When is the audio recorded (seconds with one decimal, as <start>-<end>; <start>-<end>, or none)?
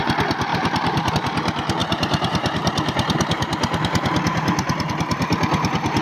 0.0-0.5; 1.1-1.8; 4.9-6.0